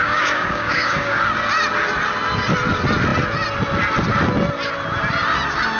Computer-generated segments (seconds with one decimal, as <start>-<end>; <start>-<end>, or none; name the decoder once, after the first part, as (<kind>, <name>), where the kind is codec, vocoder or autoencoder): 0.0-1.2 (codec, DAC)